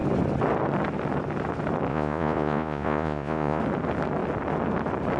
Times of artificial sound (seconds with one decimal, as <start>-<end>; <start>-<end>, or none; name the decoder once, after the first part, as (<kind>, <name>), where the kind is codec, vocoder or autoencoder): 1.9-3.6 (vocoder, Vocos)